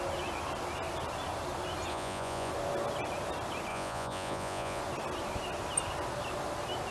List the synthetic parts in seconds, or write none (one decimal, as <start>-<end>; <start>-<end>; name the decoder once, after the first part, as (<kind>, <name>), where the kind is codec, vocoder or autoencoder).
1.9-2.5 (vocoder, Vocos); 3.7-4.8